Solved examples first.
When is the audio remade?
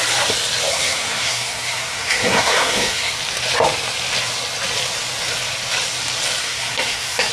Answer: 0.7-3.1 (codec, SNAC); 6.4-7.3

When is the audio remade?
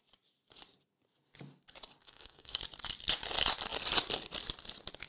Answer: 2.0-2.6 (codec, SNAC)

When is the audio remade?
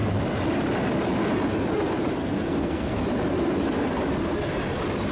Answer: 2.2-3.0 (codec, SNAC)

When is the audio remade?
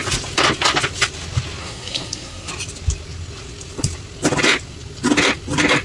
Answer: 1.6-2.5 (codec, SNAC)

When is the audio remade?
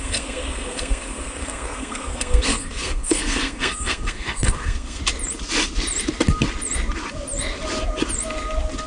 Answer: 0.0-5.0 (codec, SNAC)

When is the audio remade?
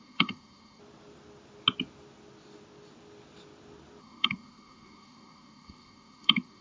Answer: 0.0-0.8 (codec, SNAC); 4.0-6.6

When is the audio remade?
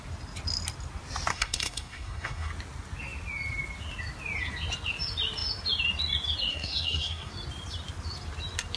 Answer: 1.3-2.5 (codec, SNAC); 6.5-7.3